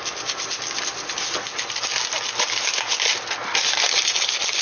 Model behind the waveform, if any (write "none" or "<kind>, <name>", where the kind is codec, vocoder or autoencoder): none